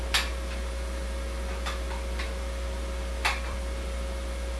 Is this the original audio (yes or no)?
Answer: yes